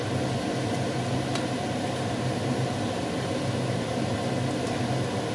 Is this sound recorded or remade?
recorded